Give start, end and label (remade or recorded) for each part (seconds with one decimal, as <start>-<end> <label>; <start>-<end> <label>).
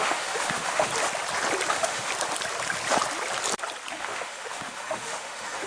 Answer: 0.0-0.9 remade; 0.9-1.7 recorded; 1.7-2.1 remade; 2.1-3.9 recorded; 3.9-5.7 remade